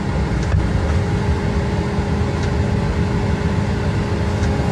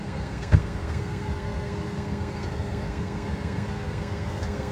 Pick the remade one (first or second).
second